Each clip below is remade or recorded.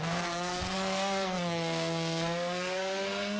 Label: remade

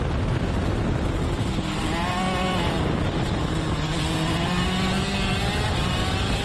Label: recorded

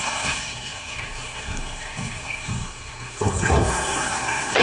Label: remade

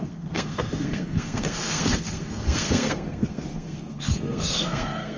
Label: remade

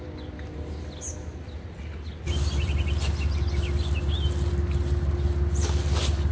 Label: recorded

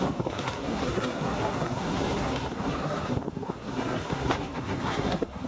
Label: remade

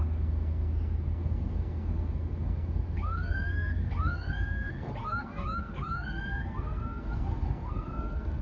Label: remade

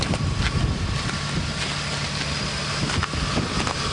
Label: recorded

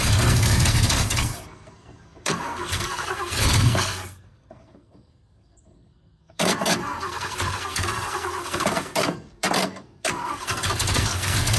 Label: remade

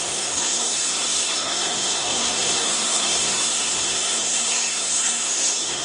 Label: remade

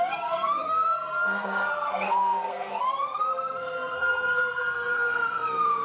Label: remade